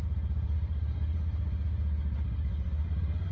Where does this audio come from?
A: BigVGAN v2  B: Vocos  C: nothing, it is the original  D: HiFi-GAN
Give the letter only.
C